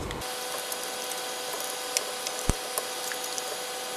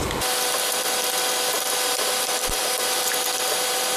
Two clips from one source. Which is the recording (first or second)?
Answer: first